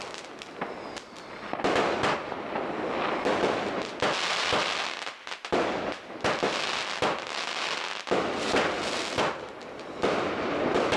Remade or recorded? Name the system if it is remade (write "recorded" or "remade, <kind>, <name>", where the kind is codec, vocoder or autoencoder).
recorded